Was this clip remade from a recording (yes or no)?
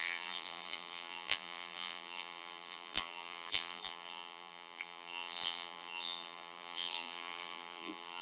yes